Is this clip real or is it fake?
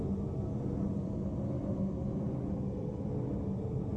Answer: real